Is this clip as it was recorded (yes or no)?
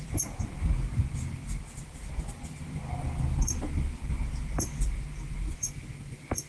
yes